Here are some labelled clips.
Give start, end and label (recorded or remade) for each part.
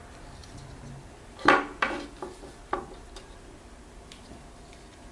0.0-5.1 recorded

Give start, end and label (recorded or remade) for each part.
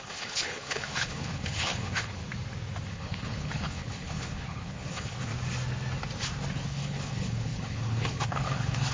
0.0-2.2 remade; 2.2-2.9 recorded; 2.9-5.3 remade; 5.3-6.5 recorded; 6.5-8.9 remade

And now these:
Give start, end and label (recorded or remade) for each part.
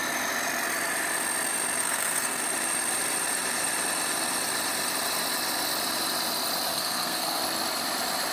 0.0-1.8 recorded; 1.8-2.4 remade; 2.4-6.7 recorded; 6.7-7.4 remade; 7.4-8.3 recorded